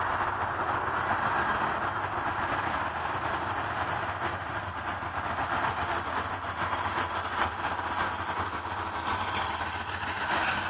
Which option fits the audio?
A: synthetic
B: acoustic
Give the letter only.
B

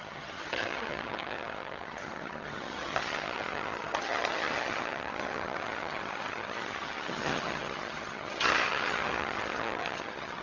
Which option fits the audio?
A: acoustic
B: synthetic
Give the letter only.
B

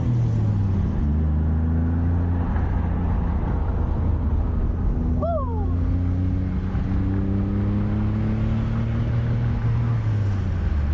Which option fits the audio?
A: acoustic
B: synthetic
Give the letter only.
A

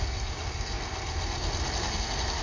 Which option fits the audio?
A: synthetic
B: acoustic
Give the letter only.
B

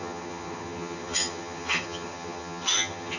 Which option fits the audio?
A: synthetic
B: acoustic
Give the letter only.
A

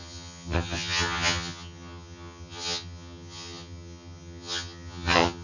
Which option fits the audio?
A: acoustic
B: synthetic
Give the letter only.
B